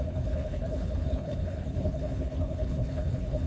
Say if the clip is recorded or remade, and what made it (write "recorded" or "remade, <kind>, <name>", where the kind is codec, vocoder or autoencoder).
remade, codec, HILCodec